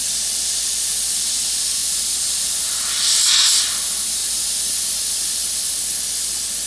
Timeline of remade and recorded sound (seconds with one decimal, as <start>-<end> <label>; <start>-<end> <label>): 0.0-0.5 remade; 0.5-1.8 recorded; 1.8-2.6 remade; 2.6-6.7 recorded